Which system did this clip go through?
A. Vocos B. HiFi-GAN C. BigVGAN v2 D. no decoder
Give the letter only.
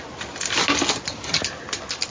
D